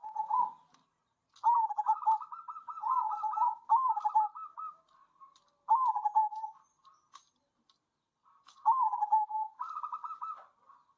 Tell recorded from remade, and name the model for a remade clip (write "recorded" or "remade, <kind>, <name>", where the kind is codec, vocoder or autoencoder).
recorded